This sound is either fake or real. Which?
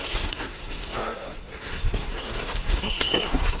fake